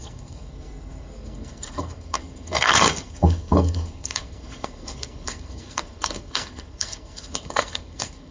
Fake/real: fake